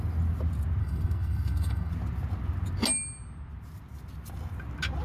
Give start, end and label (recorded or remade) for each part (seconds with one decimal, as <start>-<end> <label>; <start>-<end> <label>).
0.0-0.8 recorded; 0.8-1.9 remade; 1.9-5.0 recorded